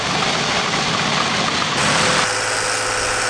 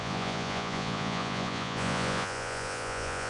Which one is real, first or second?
first